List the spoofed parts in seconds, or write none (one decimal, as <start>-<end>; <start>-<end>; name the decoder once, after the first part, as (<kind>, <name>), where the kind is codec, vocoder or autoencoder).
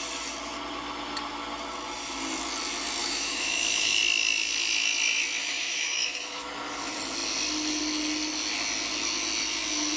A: 3.0-4.0 (autoencoder, DAC-VAE); 5.4-6.5